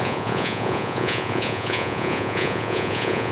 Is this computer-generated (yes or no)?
yes